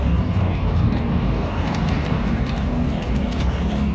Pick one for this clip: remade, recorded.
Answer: remade